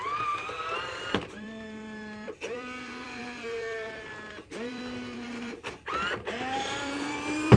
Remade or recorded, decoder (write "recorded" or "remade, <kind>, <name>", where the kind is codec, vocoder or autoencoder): remade, vocoder, BigVGAN v2